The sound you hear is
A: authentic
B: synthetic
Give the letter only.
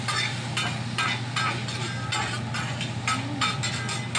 A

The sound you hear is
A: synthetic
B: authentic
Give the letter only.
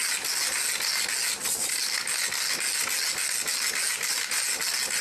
B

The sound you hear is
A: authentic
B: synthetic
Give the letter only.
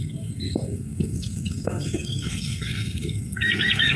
B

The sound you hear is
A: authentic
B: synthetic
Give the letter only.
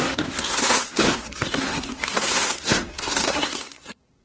B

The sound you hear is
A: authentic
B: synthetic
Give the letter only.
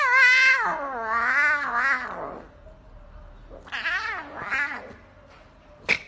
A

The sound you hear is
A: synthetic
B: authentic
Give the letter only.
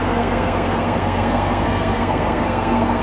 A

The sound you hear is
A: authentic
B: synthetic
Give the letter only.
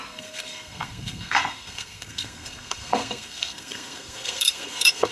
B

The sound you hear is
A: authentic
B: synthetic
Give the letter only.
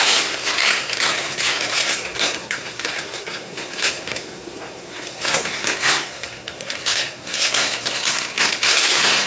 B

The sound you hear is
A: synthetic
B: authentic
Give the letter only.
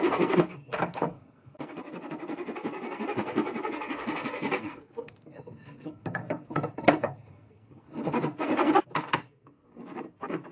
A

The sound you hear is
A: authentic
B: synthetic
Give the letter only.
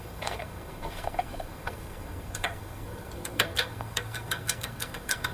B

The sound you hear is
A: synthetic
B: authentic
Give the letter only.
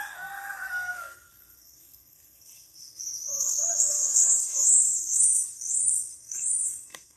A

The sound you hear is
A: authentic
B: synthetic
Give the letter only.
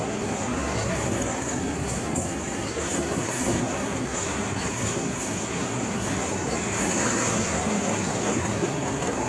B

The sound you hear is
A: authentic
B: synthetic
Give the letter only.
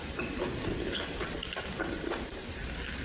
A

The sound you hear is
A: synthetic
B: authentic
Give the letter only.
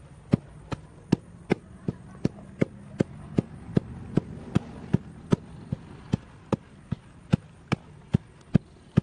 B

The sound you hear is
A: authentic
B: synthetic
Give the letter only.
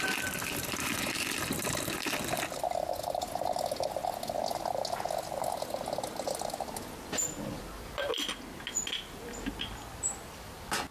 A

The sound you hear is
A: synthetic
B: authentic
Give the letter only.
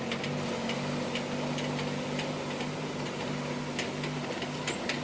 B